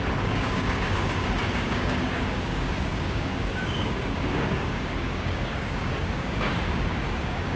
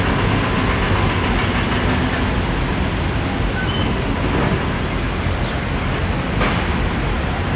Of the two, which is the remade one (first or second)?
first